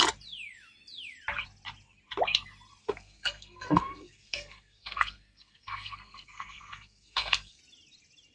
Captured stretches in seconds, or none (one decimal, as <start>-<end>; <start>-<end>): 0.0-2.8; 7.6-8.3